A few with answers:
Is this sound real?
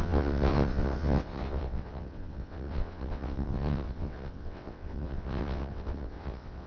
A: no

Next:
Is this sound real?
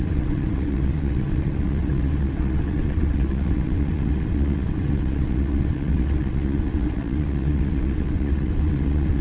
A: no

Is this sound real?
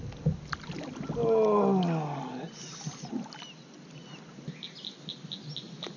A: yes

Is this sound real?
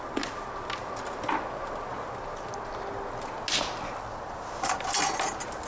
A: yes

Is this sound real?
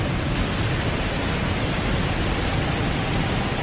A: yes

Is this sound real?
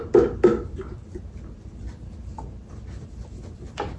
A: yes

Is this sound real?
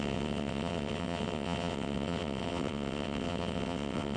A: no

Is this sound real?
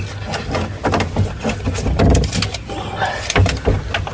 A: yes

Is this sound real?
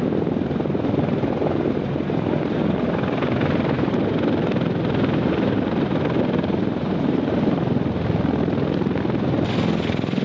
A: yes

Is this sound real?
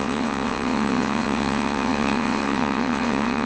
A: no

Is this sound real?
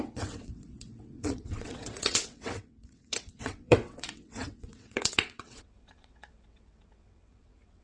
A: no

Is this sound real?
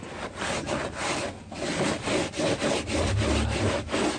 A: yes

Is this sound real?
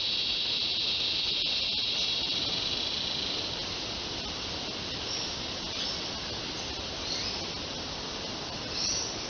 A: yes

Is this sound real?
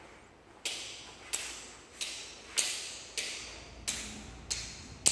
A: yes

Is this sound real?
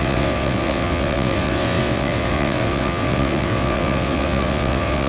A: no